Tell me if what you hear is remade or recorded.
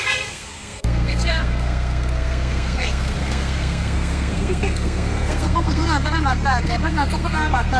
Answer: remade